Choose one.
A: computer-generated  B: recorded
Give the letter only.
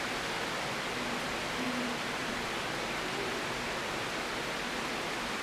B